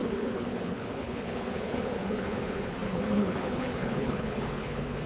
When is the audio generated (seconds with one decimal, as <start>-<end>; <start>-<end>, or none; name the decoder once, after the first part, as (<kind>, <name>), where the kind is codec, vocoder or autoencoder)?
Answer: 0.0-5.1 (codec, HILCodec)